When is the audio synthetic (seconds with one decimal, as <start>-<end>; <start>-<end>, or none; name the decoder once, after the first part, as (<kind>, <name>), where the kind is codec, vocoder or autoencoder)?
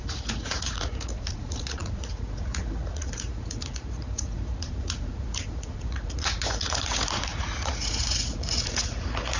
0.0-9.4 (vocoder, Vocos)